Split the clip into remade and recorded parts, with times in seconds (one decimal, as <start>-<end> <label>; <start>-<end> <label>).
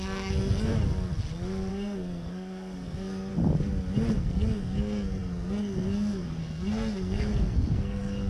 0.0-0.7 remade; 0.7-1.7 recorded; 1.7-3.3 remade; 3.3-4.2 recorded; 4.2-8.3 remade